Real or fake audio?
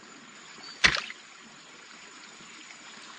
real